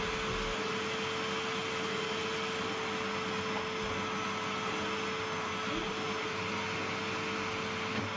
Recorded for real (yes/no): yes